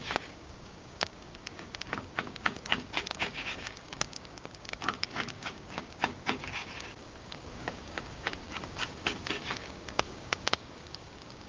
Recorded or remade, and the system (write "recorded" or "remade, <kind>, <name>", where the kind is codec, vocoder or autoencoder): remade, codec, DAC